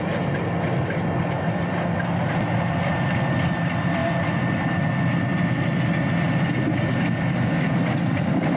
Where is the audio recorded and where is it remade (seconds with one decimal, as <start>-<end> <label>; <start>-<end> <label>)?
0.0-8.6 recorded